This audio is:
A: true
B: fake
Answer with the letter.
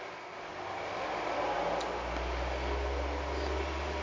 A